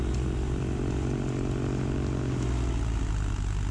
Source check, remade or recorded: recorded